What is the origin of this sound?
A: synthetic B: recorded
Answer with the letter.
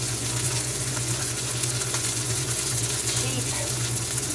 A